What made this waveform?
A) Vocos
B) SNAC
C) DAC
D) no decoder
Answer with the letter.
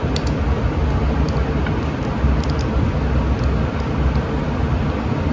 D